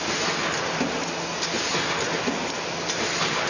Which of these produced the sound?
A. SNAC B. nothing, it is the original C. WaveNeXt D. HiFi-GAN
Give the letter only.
B